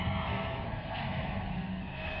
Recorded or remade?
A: remade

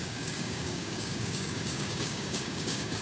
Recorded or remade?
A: remade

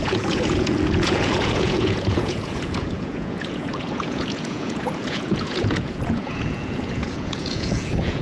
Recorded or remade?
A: remade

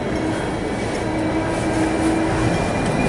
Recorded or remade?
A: recorded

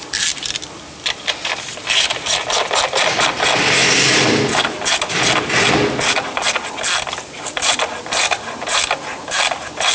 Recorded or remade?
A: recorded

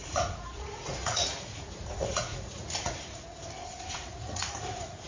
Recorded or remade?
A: remade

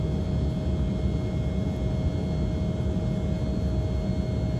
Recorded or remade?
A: recorded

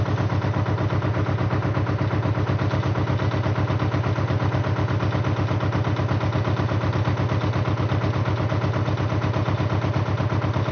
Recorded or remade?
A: recorded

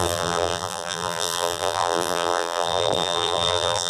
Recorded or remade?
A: remade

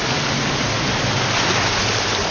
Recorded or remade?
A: recorded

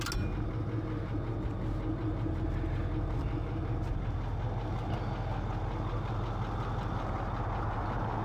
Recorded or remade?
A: recorded